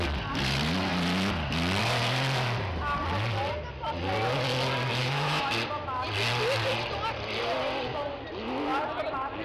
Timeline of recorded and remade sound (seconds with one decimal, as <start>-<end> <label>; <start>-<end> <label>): 0.0-5.0 recorded; 5.0-5.5 remade; 5.5-9.4 recorded